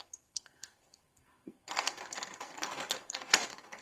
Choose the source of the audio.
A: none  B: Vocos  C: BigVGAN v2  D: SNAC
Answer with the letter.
D